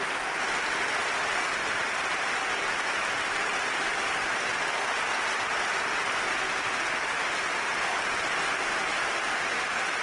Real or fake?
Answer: real